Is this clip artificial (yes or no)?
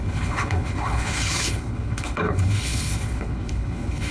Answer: yes